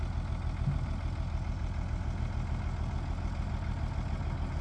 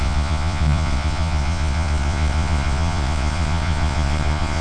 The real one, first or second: first